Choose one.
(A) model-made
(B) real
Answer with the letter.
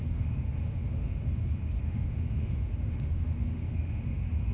A